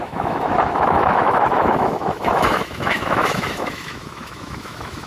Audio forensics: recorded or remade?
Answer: remade